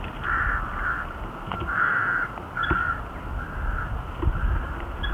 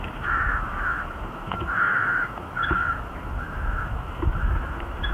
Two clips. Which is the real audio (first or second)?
first